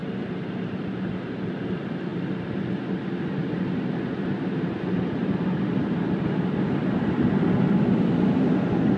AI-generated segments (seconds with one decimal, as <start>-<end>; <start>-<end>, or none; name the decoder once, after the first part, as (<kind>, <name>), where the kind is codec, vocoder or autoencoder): 0.0-1.3 (vocoder, BigVGAN v2); 5.2-9.0